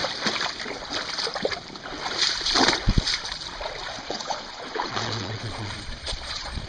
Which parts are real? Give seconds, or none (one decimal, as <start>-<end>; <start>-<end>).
0.0-4.0